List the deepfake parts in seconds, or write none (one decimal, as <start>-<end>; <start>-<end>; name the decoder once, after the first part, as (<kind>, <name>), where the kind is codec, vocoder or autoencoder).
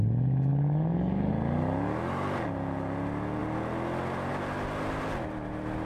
0.5-1.3 (codec, DAC)